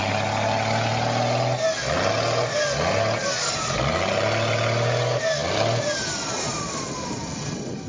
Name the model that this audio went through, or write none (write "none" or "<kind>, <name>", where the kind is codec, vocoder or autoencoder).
none